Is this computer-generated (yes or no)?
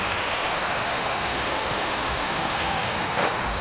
yes